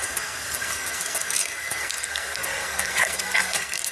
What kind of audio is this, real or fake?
fake